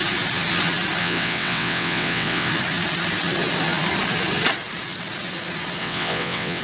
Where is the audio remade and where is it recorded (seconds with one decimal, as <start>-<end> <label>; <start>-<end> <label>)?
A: 0.0-1.0 recorded; 1.0-2.5 remade; 2.5-5.8 recorded; 5.8-6.6 remade